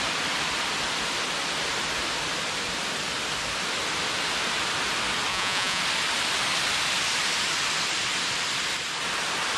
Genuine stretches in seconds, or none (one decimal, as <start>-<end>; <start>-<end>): 0.0-5.3; 5.8-9.6